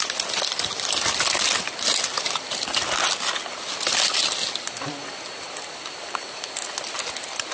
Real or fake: real